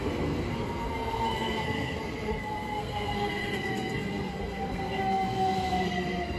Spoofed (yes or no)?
yes